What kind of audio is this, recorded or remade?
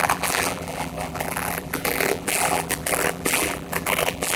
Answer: remade